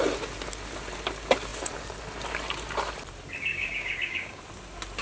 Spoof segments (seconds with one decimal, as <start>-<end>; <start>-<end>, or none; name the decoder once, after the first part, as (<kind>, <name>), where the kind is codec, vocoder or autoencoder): 3.5-4.4 (codec, DAC)